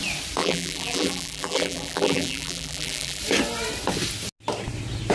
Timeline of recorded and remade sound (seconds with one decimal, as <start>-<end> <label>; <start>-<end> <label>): 0.0-0.4 recorded; 0.4-3.2 remade; 3.2-5.1 recorded